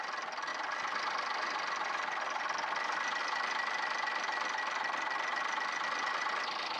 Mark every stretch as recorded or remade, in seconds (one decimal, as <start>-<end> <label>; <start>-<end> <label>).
0.0-6.8 recorded